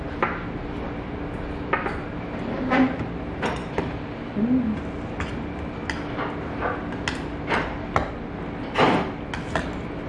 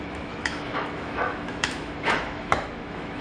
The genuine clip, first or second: first